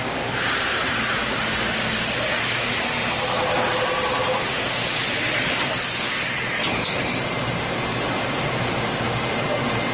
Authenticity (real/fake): real